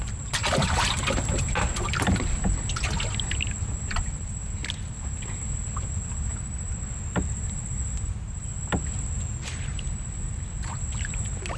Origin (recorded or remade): recorded